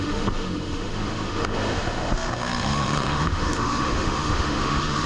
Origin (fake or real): fake